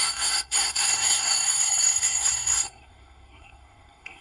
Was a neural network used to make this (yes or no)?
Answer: yes